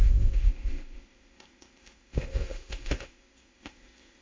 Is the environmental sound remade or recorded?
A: remade